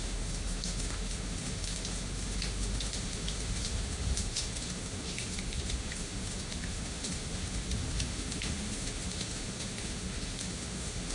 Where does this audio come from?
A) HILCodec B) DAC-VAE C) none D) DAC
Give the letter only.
B